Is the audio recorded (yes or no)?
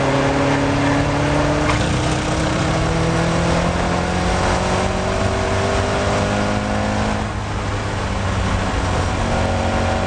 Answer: yes